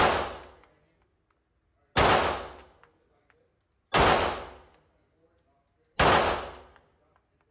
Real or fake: real